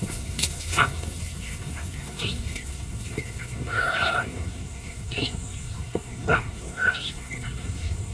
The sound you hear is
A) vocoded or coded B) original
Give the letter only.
A